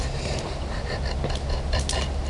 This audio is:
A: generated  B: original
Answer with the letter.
B